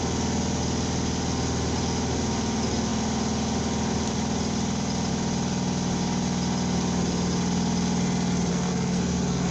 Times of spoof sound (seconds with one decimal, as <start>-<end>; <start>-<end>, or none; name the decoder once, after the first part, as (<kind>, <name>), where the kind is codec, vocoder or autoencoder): 8.5-9.5 (codec, SNAC)